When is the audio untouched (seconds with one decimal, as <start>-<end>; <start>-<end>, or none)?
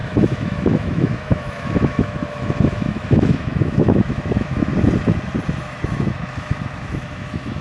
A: 4.7-5.6